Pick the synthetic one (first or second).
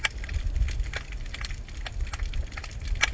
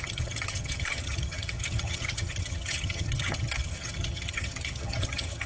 second